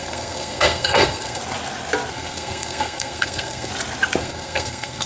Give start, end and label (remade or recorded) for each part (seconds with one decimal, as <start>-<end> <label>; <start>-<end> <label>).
0.0-1.4 remade; 1.4-2.1 recorded; 2.1-3.7 remade; 3.7-4.2 recorded; 4.2-5.1 remade